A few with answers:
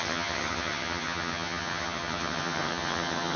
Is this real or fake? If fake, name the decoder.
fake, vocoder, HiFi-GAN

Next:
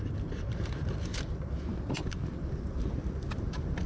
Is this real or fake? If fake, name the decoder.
real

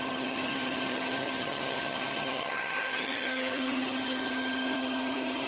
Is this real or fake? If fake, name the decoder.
fake, vocoder, HiFi-GAN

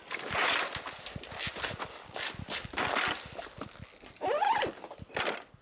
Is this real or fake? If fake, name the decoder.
real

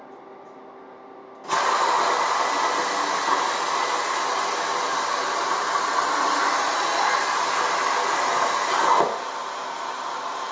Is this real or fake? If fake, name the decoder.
real